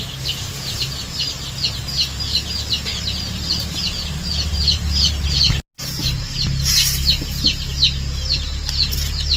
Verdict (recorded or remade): recorded